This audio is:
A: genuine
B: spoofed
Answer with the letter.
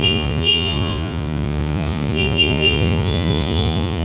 B